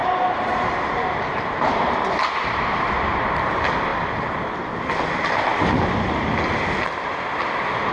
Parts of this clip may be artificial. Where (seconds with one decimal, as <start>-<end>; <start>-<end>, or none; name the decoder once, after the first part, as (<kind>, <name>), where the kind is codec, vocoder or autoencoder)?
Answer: 0.0-3.4 (vocoder, BigVGAN v2)